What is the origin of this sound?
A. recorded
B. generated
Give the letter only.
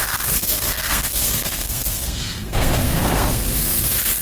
B